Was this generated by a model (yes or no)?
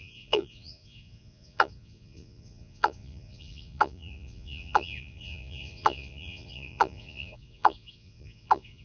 yes